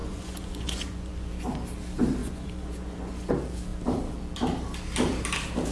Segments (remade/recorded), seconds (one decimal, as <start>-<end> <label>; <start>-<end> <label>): 0.0-1.3 remade; 1.3-2.2 recorded; 2.2-3.3 remade; 3.3-5.7 recorded